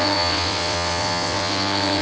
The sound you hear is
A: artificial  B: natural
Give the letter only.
A